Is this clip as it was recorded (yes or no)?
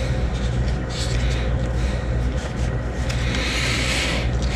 yes